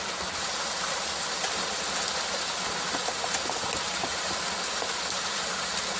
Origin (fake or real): real